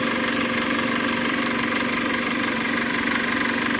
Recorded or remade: remade